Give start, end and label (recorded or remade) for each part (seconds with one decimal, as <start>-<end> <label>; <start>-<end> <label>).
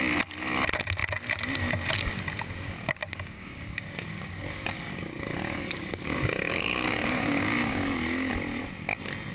0.0-3.0 recorded; 3.0-8.3 remade; 8.3-9.3 recorded